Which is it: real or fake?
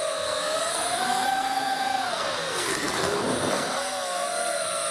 fake